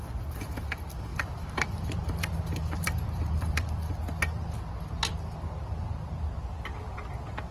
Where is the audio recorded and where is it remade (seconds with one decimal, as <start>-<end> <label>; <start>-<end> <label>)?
0.0-1.1 recorded; 1.1-3.9 remade; 3.9-7.5 recorded